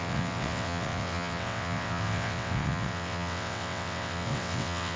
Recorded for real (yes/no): no